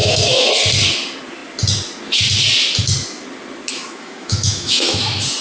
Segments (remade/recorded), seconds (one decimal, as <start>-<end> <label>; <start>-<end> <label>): 0.0-0.5 remade; 0.5-3.7 recorded; 3.7-5.0 remade; 5.0-5.4 recorded